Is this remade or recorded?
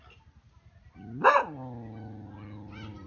recorded